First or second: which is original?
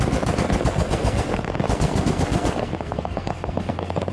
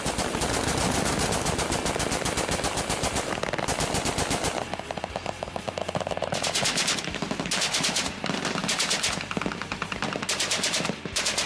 second